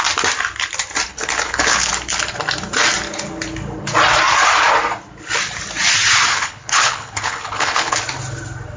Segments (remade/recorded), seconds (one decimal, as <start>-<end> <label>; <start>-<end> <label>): 0.0-1.1 recorded; 1.1-1.9 remade; 1.9-6.3 recorded; 6.3-8.0 remade; 8.0-8.8 recorded